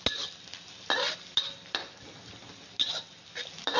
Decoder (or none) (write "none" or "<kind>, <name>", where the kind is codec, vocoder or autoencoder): none